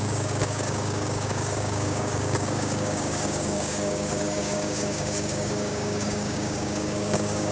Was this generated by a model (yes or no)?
yes